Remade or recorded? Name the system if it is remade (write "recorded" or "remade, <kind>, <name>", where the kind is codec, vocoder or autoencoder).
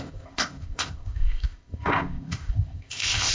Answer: remade, codec, ZipCodec